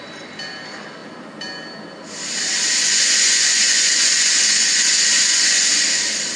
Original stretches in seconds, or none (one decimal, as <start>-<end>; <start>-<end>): 0.0-2.8; 6.0-6.4

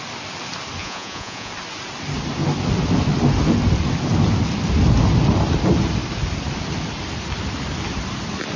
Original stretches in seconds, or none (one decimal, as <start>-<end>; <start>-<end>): 0.0-0.8; 1.5-8.6

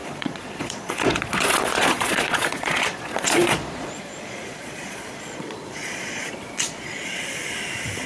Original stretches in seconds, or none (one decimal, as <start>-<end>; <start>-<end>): 7.2-8.1

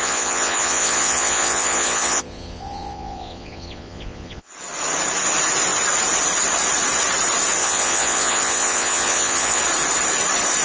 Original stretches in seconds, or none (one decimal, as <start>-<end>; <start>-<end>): 4.5-7.6; 9.6-10.6

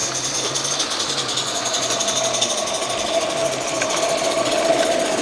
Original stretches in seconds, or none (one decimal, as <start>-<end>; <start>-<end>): 0.0-1.4; 2.0-5.2